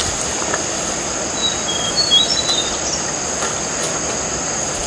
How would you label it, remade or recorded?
recorded